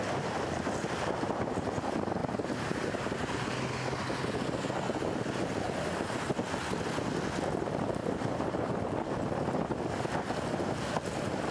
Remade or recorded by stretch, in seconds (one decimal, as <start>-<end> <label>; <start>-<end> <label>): 0.0-2.2 recorded; 2.2-3.5 remade; 3.5-8.0 recorded; 8.0-8.8 remade; 8.8-11.5 recorded